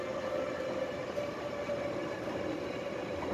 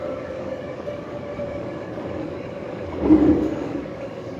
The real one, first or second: first